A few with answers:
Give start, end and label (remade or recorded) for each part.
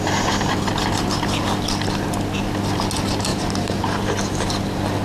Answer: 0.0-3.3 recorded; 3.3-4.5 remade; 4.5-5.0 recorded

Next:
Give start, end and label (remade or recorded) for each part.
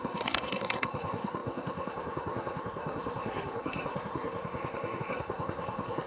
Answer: 0.0-6.1 remade